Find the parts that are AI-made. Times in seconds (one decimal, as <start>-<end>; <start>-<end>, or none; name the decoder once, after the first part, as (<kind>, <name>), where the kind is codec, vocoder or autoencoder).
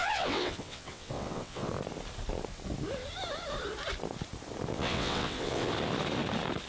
0.0-1.7 (vocoder, WaveNeXt); 4.7-5.7